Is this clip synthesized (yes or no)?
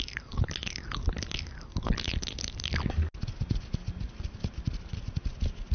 no